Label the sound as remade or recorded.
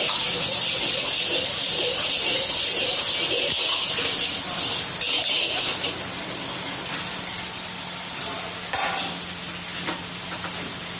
recorded